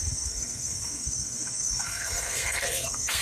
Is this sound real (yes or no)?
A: no